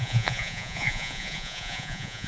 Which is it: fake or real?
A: fake